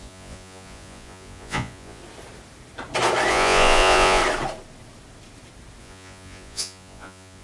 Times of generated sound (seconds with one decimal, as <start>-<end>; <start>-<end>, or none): 0.0-2.0; 3.3-4.2; 5.8-7.4

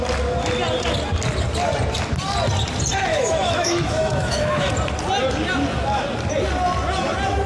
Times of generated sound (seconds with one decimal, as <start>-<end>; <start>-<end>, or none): 3.1-4.7

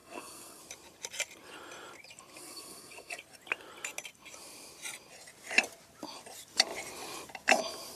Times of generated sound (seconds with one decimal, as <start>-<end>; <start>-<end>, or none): 0.0-0.6; 2.4-3.2